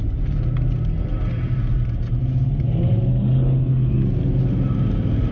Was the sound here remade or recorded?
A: recorded